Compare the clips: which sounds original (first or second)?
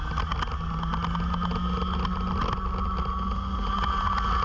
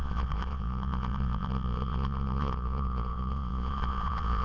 first